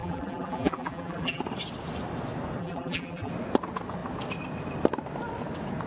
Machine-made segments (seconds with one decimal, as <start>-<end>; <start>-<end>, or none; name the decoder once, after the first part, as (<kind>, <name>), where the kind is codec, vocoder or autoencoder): 0.0-1.4 (vocoder, BigVGAN v2); 2.6-3.3

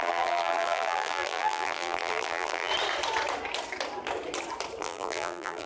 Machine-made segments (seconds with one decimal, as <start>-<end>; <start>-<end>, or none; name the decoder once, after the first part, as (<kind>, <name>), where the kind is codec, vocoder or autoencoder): 0.0-2.7 (vocoder, BigVGAN v2); 4.8-5.7

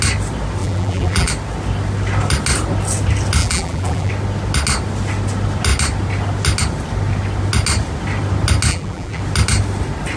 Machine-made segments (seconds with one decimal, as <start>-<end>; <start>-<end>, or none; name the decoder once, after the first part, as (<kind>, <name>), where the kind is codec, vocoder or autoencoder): 0.6-1.3 (vocoder, BigVGAN v2); 3.4-4.1; 8.7-9.2

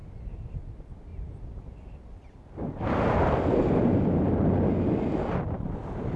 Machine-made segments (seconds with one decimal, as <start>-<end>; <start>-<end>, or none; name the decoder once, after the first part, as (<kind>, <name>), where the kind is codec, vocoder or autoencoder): 1.1-4.8 (vocoder, BigVGAN v2)

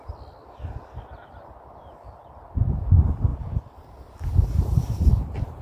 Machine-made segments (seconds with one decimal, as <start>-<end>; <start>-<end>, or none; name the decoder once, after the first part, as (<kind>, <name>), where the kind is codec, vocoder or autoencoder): none

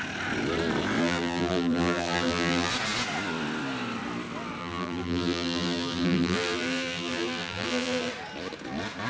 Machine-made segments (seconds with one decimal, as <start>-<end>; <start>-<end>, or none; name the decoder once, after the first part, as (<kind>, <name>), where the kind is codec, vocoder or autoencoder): 1.0-2.7 (vocoder, BigVGAN v2); 4.6-8.1

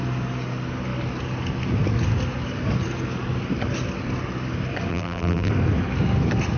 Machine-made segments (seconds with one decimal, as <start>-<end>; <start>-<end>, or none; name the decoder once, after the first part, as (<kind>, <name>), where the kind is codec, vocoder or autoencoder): 4.9-5.5 (vocoder, BigVGAN v2)

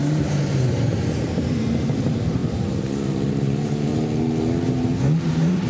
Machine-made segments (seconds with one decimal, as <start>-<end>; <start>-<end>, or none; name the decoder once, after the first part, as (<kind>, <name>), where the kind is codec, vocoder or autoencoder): 0.0-2.4 (vocoder, BigVGAN v2); 3.3-3.9; 5.2-5.7